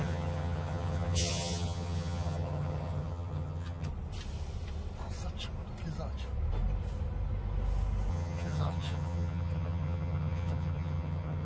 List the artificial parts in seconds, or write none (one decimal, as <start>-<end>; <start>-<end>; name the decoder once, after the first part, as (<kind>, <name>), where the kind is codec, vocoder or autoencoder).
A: 0.0-3.9 (vocoder, HiFi-GAN); 8.1-11.4